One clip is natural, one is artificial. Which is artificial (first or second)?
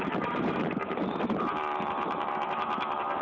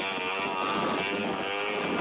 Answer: first